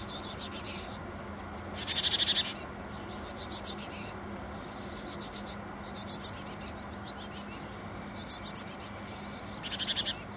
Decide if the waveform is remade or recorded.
recorded